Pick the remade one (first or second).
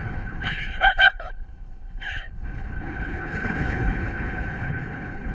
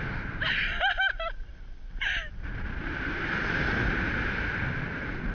first